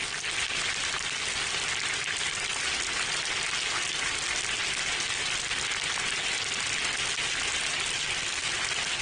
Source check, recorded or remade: recorded